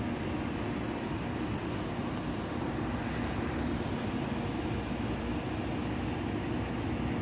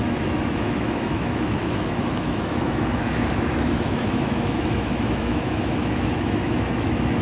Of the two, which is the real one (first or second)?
first